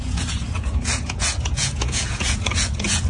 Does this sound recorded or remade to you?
remade